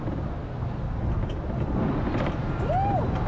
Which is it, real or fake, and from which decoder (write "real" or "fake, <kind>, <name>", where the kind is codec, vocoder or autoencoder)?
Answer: real